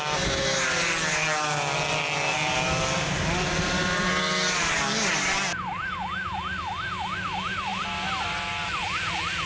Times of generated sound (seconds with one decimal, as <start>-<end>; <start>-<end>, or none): none